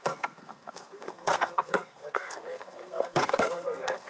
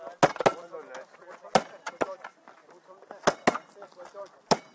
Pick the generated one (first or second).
first